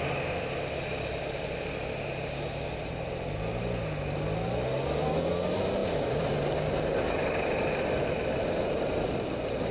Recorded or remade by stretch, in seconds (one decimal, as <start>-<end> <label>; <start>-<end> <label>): 0.0-9.7 recorded